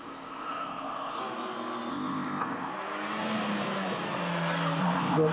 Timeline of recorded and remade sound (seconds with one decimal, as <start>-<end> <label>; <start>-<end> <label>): 0.0-1.2 remade; 1.2-1.9 recorded; 1.9-2.7 remade; 2.7-4.8 recorded; 4.8-5.3 remade